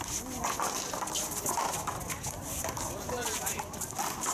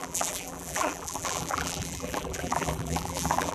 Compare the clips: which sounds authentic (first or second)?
first